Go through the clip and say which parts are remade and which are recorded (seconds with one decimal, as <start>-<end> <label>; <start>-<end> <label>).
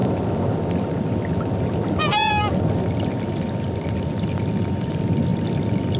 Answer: 0.0-6.0 recorded